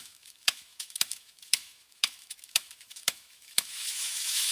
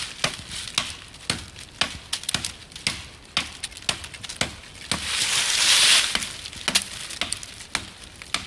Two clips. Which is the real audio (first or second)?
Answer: second